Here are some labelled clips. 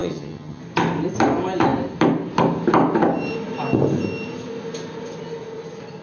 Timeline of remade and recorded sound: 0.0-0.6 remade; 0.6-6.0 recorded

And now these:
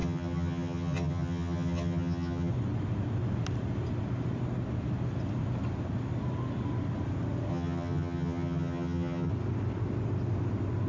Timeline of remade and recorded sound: 0.0-2.5 remade; 2.5-7.5 recorded; 7.5-9.3 remade; 9.3-10.9 recorded

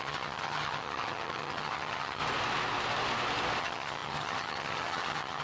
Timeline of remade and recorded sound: 0.0-2.2 remade; 2.2-3.6 recorded; 3.6-5.4 remade